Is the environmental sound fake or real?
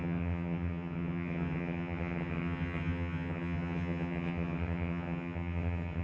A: fake